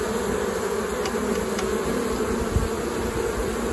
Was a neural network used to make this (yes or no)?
no